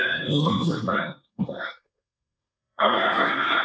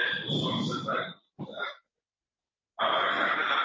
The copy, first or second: first